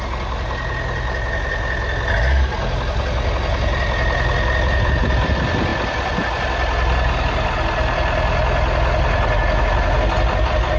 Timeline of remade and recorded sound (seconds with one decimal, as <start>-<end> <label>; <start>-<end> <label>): 0.0-10.8 recorded